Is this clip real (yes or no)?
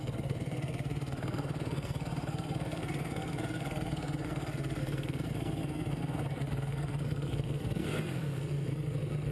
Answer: no